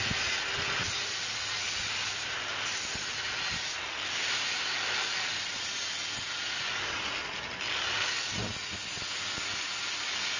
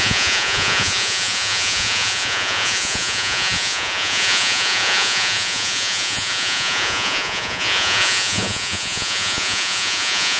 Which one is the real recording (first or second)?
first